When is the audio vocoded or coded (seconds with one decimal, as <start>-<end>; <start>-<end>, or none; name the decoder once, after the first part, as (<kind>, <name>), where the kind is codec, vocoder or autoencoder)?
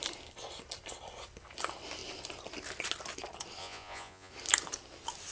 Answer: 3.6-4.3 (vocoder, Vocos)